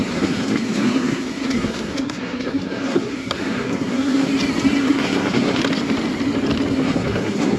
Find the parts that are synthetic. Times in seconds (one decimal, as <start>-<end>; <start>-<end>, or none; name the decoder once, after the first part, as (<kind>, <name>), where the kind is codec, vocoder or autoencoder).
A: 0.0-4.3 (codec, SNAC); 4.8-5.6; 6.7-7.6